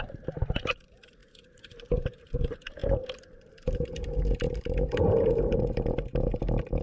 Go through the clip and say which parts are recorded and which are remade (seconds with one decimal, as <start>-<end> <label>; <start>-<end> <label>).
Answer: 0.0-6.8 remade